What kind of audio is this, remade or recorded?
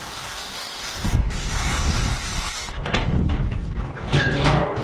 remade